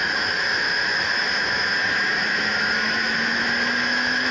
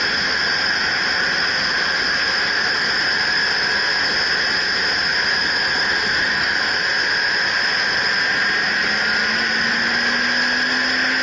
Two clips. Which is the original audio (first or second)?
second